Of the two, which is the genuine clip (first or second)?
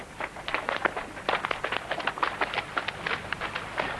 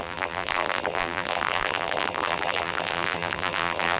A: first